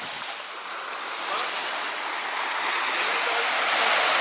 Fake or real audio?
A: real